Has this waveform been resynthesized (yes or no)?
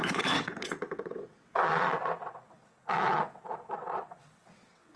yes